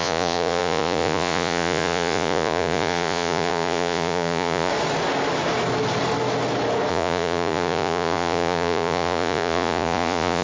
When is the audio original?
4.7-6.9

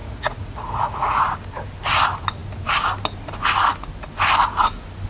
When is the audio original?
1.2-5.1

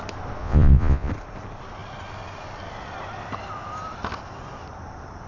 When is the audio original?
0.0-0.4; 1.1-5.3